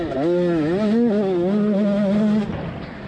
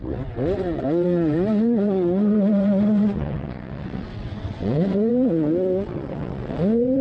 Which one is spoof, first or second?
second